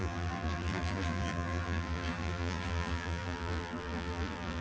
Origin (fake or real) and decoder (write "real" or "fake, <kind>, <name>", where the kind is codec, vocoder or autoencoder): fake, vocoder, BigVGAN v2